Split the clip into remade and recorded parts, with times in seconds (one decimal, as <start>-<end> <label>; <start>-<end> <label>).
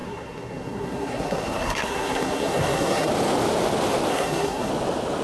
0.0-3.1 remade; 3.1-4.1 recorded; 4.1-4.7 remade; 4.7-5.2 recorded